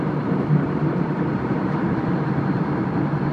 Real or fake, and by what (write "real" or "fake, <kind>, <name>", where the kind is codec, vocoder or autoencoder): fake, vocoder, BigVGAN v2